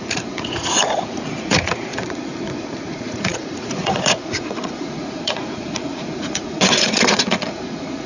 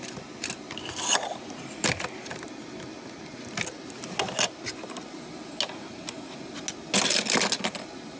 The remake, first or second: first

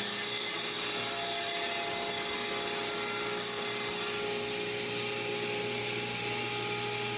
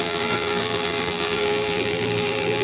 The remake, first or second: second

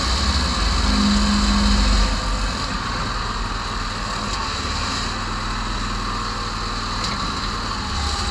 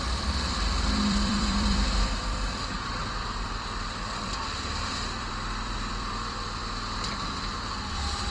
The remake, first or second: second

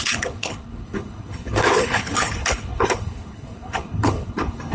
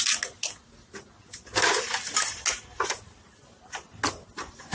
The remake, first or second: first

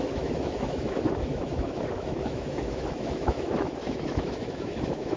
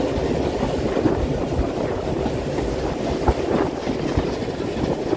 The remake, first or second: first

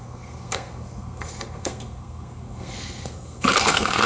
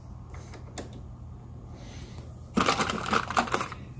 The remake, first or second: first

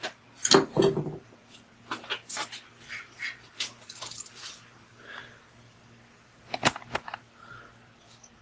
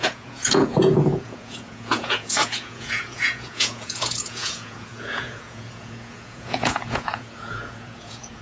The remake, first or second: second